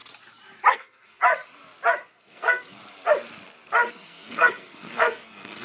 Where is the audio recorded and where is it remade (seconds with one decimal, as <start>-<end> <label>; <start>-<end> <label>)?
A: 0.0-0.7 recorded; 0.7-1.2 remade; 1.2-2.1 recorded; 2.1-2.8 remade; 2.8-3.9 recorded; 3.9-5.6 remade